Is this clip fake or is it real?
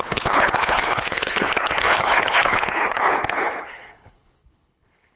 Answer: fake